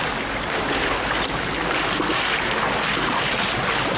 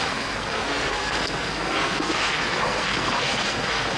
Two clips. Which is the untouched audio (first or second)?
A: first